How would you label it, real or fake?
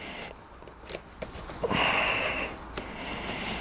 real